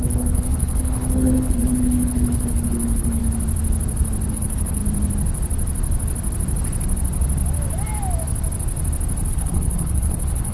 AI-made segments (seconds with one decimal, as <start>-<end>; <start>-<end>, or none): 0.0-3.2; 4.3-4.8; 9.3-10.5